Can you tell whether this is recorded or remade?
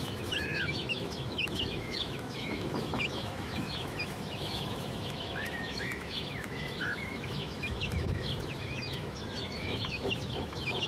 remade